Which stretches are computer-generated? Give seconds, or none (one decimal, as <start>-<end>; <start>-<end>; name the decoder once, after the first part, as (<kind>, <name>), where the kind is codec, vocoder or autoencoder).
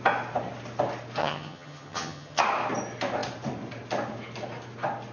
1.2-2.4 (vocoder, HiFi-GAN)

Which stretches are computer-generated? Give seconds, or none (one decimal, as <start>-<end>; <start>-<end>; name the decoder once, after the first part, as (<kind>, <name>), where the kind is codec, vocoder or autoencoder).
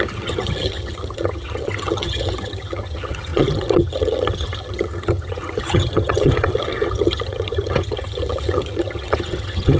0.0-9.8 (vocoder, HiFi-GAN)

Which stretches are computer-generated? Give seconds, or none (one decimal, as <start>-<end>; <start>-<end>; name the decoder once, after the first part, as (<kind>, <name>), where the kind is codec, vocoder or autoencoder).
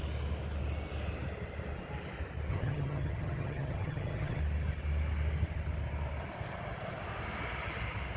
2.5-4.4 (vocoder, HiFi-GAN)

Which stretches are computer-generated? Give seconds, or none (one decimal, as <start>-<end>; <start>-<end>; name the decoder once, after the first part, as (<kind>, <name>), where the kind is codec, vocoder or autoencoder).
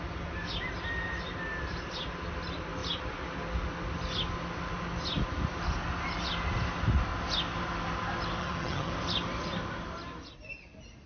8.4-8.9 (vocoder, HiFi-GAN)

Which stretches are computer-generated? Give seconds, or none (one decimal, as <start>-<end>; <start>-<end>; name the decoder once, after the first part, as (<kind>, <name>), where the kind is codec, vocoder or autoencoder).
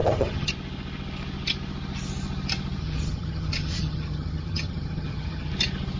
0.0-0.5 (vocoder, HiFi-GAN); 2.8-5.5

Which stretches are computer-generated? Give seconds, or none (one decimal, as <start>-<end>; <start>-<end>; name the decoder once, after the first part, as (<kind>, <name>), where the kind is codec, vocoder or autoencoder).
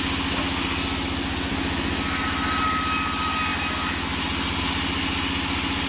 none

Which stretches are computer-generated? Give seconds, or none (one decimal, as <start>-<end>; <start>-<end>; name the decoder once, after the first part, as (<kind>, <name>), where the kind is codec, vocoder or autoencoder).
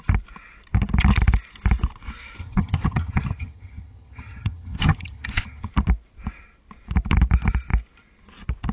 2.4-5.7 (vocoder, HiFi-GAN)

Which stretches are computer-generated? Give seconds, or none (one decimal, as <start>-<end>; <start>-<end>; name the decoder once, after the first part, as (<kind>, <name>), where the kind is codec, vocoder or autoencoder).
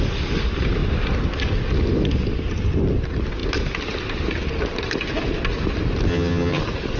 6.1-6.6 (vocoder, HiFi-GAN)